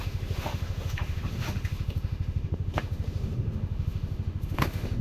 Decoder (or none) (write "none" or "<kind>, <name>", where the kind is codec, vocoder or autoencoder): autoencoder, DAC-VAE